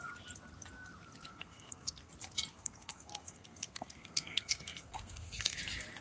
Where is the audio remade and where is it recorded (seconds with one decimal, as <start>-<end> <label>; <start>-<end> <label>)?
0.0-1.3 recorded; 1.3-2.1 remade; 2.1-2.5 recorded; 2.5-5.6 remade; 5.6-6.0 recorded